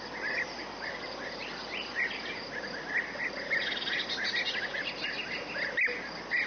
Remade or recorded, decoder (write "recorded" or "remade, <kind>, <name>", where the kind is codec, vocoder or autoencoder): recorded